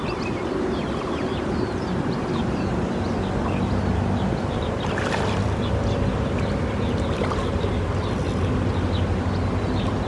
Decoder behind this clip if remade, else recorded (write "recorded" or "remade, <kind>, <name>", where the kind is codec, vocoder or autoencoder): recorded